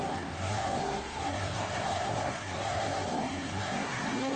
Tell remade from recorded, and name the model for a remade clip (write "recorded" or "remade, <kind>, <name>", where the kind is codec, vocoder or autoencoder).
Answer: remade, codec, SNAC